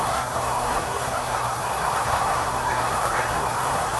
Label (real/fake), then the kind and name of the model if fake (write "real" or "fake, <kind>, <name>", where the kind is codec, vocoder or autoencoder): fake, codec, SNAC